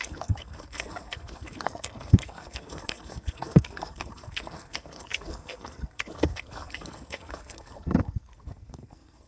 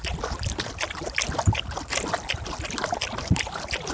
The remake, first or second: first